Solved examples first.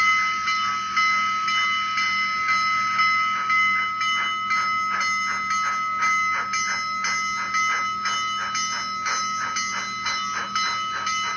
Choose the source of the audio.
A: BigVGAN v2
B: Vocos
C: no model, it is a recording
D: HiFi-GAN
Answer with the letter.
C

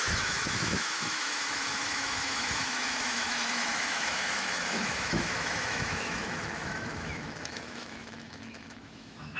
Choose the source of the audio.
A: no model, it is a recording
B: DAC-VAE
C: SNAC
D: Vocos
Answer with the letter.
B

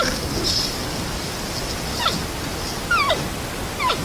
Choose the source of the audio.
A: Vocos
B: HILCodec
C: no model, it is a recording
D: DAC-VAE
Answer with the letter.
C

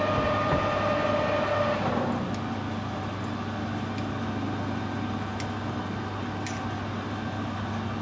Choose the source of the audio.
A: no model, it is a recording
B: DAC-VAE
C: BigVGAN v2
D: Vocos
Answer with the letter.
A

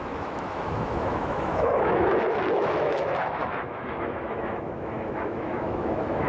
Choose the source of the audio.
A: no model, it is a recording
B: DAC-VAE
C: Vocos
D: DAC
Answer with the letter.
B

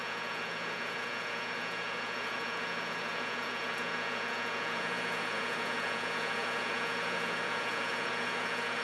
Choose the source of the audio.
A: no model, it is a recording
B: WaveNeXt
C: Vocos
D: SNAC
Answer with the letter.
C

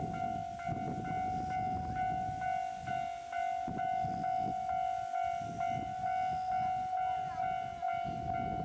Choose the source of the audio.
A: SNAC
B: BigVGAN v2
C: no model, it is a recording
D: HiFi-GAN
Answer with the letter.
C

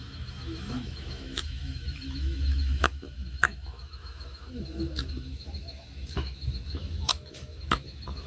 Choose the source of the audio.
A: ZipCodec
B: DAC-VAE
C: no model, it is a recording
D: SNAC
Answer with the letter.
B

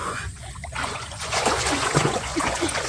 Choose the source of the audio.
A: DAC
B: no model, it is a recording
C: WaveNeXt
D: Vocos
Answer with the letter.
D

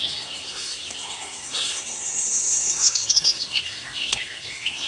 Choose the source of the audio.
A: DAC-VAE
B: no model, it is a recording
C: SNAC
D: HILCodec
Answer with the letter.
C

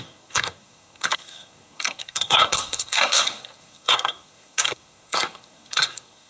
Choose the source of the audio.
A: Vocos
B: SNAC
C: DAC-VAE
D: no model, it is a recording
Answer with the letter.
B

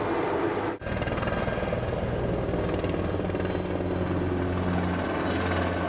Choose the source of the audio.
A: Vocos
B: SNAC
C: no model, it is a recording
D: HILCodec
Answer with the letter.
C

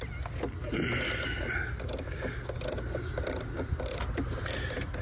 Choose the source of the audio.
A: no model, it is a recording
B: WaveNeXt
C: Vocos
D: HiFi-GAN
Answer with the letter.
A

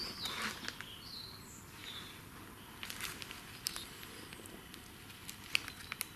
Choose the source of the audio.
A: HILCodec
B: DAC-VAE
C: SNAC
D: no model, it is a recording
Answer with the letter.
D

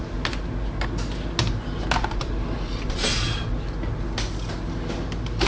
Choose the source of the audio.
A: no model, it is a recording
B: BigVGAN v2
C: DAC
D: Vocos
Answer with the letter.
A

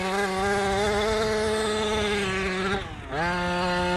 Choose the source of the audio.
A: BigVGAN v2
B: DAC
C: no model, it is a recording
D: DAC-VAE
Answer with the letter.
C